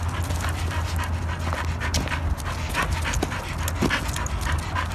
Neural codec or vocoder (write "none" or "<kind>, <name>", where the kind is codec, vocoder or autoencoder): none